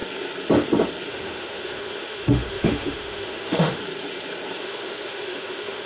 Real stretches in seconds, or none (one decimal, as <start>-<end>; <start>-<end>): 0.0-1.1; 3.8-4.6